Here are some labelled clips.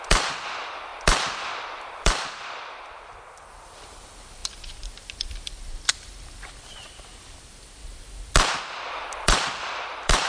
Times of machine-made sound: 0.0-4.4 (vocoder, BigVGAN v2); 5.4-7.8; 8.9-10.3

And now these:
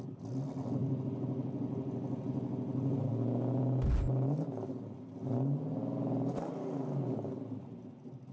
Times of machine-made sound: none